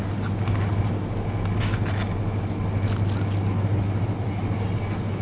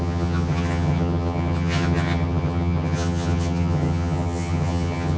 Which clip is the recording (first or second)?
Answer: first